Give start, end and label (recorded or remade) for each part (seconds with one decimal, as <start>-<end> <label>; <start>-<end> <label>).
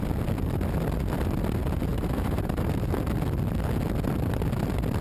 0.0-1.9 recorded; 1.9-3.0 remade; 3.0-5.0 recorded